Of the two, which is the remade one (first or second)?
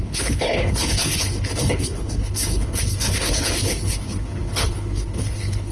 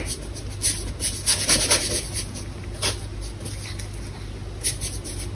first